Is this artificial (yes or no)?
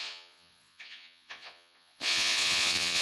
yes